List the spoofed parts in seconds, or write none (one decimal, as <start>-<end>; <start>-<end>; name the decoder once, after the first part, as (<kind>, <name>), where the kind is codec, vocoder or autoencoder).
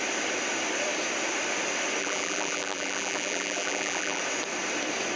2.0-4.2 (vocoder, BigVGAN v2)